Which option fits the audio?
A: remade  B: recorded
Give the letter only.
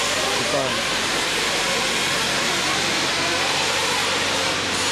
A